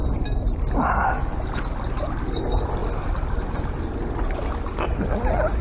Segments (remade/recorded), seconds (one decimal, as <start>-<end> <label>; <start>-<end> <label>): 0.0-5.6 recorded